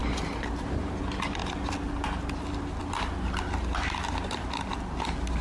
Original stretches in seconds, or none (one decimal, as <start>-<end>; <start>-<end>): 0.0-5.4